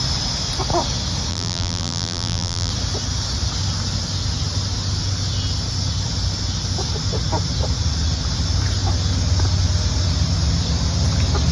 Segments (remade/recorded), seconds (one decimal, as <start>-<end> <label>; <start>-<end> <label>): 0.0-1.3 recorded; 1.3-2.7 remade; 2.7-11.5 recorded

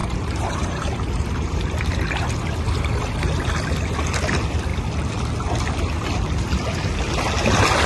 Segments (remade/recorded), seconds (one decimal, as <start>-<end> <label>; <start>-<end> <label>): 0.0-2.3 remade; 2.3-7.9 recorded